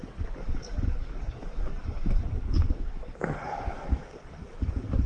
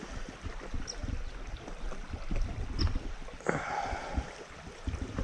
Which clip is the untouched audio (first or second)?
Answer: second